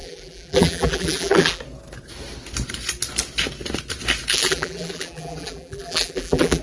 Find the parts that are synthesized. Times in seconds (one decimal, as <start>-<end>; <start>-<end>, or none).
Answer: 0.0-1.6; 4.3-6.6